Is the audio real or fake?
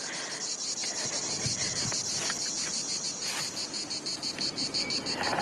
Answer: real